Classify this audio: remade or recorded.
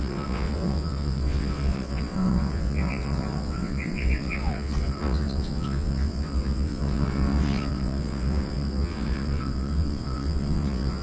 remade